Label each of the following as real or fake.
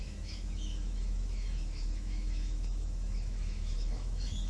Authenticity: fake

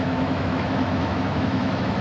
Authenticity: fake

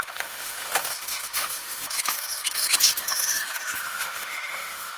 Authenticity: fake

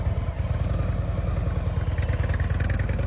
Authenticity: real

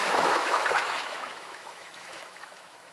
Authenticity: fake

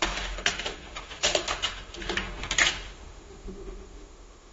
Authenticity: fake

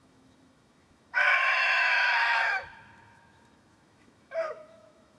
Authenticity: fake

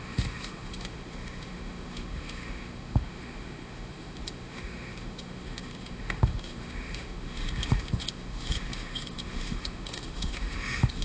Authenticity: fake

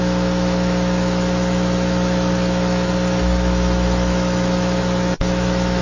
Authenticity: fake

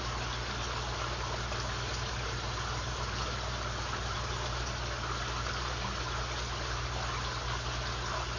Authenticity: real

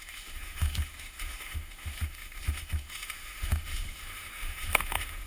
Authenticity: fake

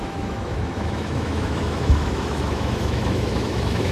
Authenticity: fake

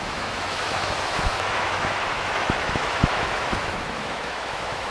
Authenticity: fake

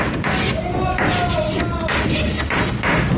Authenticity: real